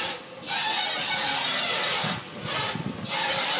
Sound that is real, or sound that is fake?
real